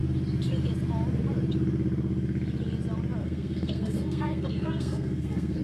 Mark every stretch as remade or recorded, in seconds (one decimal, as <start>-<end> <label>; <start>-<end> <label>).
0.0-3.2 recorded; 3.2-5.6 remade